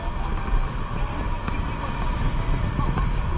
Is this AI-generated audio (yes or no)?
no